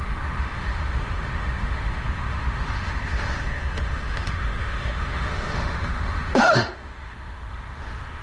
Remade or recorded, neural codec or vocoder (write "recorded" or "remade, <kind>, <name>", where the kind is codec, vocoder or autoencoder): remade, autoencoder, DAC-VAE